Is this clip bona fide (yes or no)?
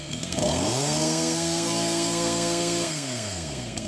no